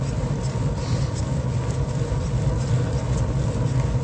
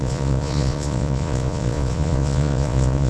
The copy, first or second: second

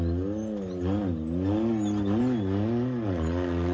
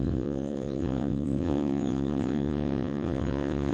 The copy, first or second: second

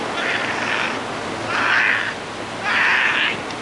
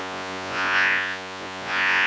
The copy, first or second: second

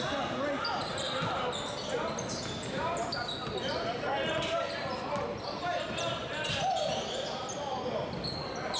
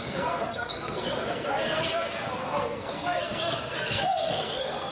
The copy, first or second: second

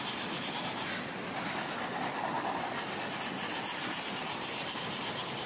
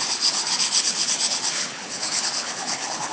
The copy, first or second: second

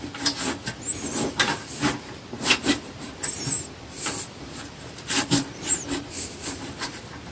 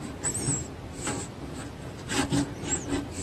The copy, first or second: first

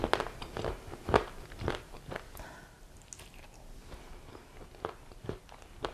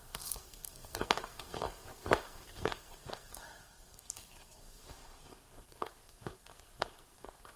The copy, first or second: second